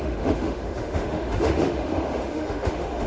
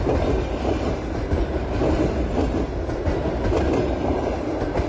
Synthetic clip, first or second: first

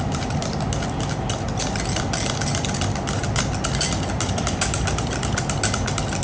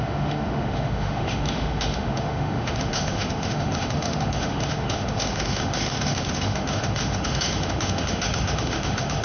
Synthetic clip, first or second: second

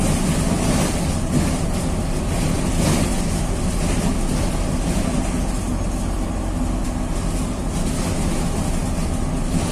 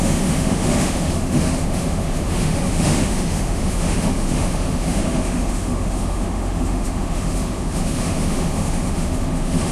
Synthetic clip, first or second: second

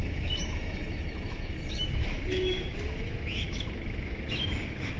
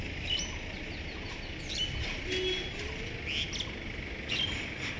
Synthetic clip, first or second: first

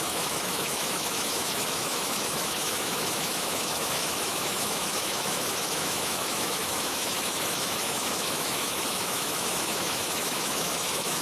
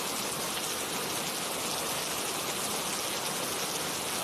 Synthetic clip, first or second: first